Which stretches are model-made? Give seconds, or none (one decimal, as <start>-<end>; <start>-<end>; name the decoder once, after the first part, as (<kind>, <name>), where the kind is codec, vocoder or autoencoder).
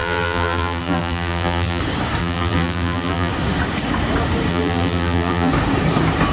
0.0-1.8 (vocoder, BigVGAN v2); 2.2-3.3; 4.5-5.5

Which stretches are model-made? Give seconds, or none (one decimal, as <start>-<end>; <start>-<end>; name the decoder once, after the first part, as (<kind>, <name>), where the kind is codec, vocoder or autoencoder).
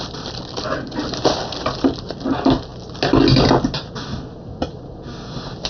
0.0-2.7 (vocoder, BigVGAN v2); 4.0-5.7